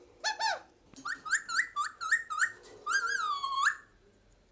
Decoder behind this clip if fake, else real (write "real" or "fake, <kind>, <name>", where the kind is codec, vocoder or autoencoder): real